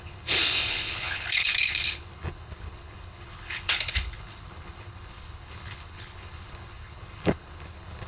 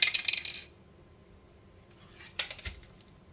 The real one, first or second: second